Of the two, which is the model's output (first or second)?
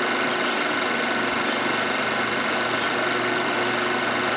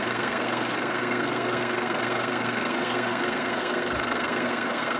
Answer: second